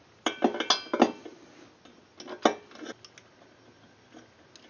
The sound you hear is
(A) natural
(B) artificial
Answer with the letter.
A